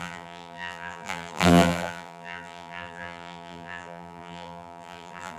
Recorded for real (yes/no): no